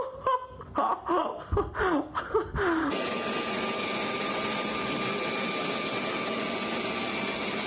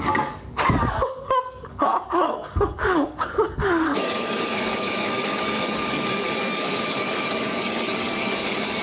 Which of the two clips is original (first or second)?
first